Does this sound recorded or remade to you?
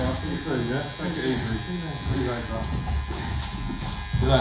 recorded